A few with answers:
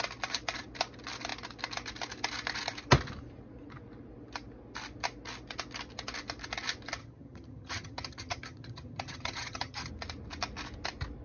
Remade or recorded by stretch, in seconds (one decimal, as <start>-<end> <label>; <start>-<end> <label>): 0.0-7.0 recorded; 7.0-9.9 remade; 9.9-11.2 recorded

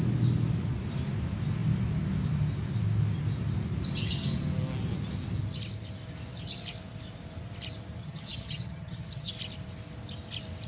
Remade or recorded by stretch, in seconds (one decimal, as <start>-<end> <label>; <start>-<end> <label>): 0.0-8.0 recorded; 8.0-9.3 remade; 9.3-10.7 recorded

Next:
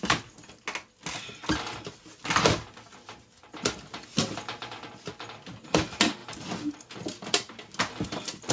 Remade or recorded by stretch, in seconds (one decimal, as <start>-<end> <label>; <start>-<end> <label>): 0.0-8.5 recorded

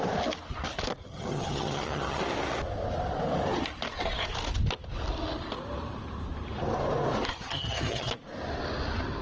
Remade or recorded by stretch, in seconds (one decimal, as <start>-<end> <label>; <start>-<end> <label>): 0.0-1.0 recorded; 1.0-2.2 remade; 2.2-7.3 recorded; 7.3-8.1 remade; 8.1-9.2 recorded

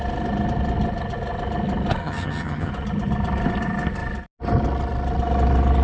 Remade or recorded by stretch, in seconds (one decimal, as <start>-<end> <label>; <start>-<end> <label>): 0.0-2.0 recorded; 2.0-2.7 remade; 2.7-5.8 recorded

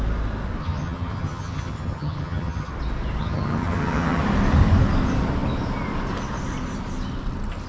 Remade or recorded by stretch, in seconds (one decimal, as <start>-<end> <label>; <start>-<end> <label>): 0.0-0.6 recorded; 0.6-2.7 remade; 2.7-3.2 recorded; 3.2-4.2 remade; 4.2-7.7 recorded